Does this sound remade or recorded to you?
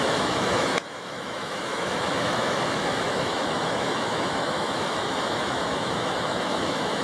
remade